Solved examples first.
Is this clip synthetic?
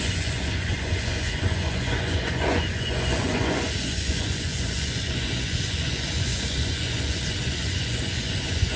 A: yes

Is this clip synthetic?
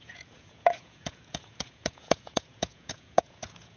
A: yes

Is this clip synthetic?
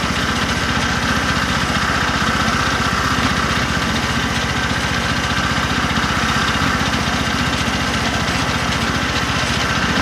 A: no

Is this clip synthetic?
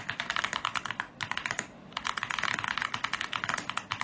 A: no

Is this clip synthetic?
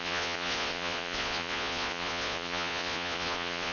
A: yes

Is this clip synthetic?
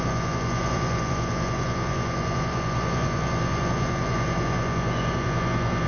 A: yes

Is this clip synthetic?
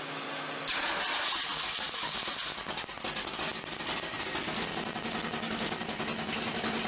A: no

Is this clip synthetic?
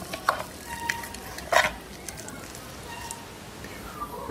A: no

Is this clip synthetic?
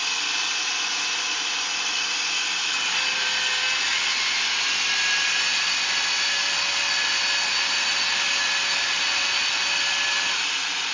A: no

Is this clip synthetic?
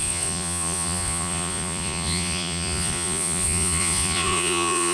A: yes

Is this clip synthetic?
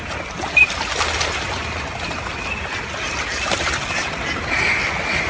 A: no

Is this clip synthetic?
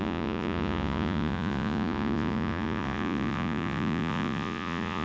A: yes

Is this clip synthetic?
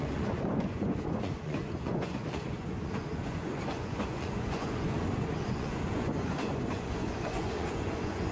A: yes